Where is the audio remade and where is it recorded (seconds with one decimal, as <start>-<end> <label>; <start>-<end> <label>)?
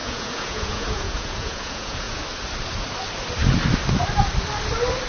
0.0-2.2 remade; 2.2-5.1 recorded